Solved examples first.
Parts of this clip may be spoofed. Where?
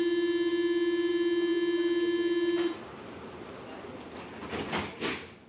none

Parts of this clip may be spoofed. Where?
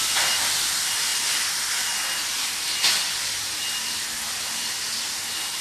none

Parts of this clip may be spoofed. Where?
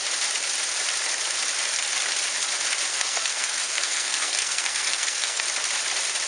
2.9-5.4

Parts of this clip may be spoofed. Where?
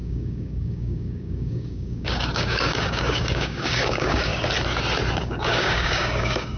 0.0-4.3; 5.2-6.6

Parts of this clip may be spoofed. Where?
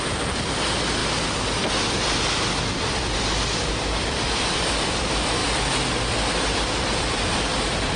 0.0-8.0